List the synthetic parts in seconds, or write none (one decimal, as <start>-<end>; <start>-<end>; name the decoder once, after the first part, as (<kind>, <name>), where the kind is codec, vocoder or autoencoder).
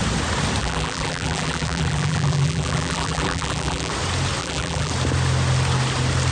0.6-3.9 (vocoder, BigVGAN v2); 4.4-4.9